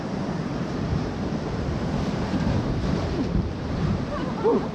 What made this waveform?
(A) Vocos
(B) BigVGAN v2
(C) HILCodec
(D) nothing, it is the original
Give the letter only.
B